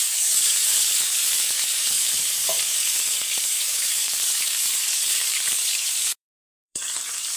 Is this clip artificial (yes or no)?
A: yes